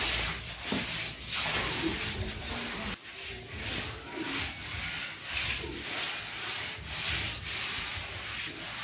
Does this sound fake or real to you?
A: real